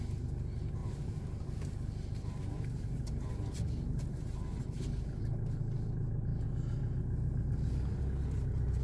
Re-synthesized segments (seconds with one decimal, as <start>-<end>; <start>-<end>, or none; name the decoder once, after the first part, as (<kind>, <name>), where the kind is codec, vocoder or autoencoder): 0.8-3.3 (vocoder, BigVGAN v2)